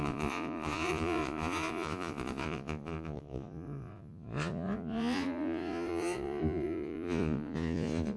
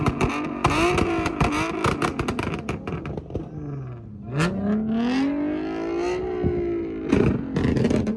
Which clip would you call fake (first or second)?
first